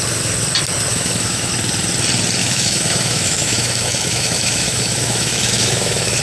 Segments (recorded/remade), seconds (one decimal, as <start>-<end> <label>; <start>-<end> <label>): 0.0-0.9 recorded; 0.9-1.5 remade; 1.5-2.4 recorded; 2.4-6.2 remade